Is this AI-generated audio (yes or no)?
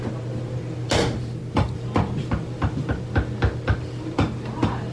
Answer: no